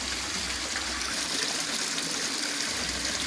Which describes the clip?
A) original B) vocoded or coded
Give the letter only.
A